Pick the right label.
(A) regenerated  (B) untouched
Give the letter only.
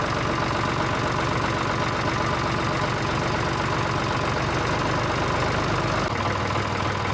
B